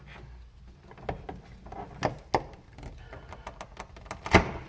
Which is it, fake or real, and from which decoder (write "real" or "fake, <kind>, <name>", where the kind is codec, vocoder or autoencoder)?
real